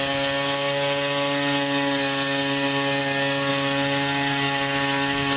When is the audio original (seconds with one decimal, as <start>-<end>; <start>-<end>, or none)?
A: 0.0-5.4